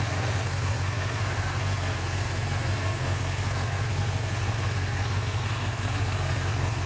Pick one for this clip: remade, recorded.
remade